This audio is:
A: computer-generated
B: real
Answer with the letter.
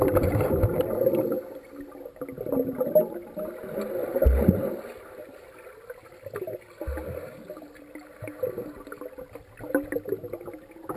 B